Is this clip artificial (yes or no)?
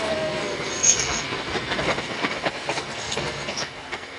yes